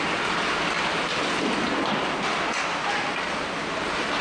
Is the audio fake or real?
real